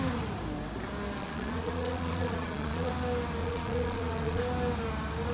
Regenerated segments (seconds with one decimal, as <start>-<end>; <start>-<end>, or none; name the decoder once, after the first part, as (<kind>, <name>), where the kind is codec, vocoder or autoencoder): 1.2-2.9 (vocoder, Vocos); 3.4-4.4

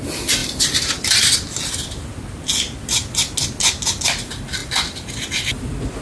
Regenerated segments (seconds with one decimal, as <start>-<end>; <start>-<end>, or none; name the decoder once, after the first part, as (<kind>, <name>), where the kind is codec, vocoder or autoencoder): none

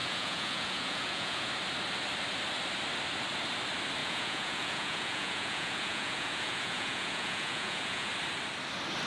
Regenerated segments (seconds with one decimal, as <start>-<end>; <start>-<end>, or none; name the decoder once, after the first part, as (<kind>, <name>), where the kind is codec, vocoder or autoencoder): 0.0-1.5 (vocoder, Vocos); 4.0-8.1